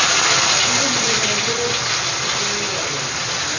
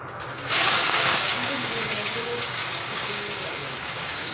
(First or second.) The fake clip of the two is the second